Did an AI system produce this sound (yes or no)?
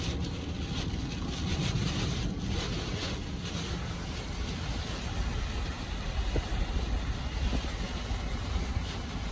no